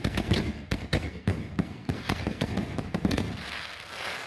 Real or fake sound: fake